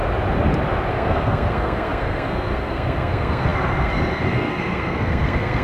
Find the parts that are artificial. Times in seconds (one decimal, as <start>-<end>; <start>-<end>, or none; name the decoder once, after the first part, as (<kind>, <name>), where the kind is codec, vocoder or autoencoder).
0.9-5.6 (codec, SNAC)